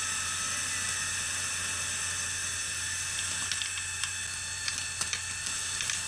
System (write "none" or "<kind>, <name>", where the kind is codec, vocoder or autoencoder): none